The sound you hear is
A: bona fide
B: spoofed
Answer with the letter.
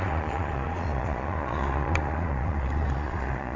B